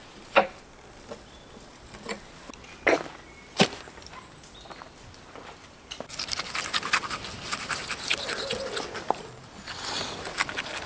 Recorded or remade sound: recorded